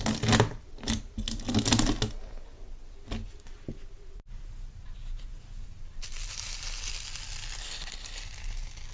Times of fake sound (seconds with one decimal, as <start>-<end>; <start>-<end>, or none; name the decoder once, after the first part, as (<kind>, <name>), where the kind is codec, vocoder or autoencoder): 7.6-8.2 (codec, HILCodec)